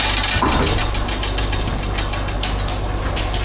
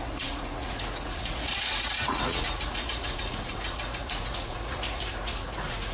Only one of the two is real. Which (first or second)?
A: first